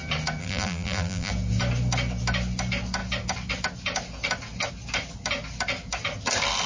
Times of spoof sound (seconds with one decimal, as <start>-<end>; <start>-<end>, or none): 0.4-1.3